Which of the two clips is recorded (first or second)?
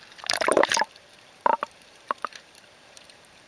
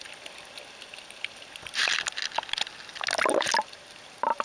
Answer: second